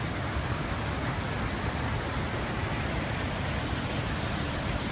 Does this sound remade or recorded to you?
recorded